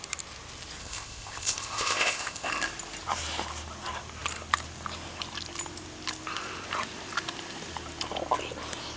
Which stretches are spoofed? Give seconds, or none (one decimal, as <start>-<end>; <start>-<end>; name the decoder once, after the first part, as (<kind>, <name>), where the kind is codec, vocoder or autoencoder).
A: 0.8-2.5 (codec, ZipCodec)